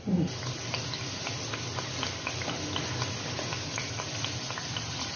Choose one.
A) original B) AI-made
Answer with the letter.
A